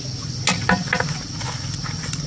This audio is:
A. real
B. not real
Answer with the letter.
A